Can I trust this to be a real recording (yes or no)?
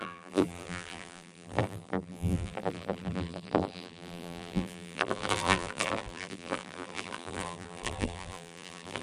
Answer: no